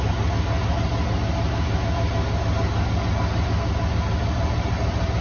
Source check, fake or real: real